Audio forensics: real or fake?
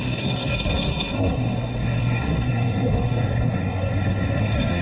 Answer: fake